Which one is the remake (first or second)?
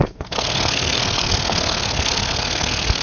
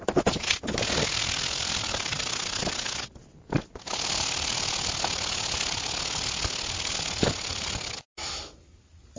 first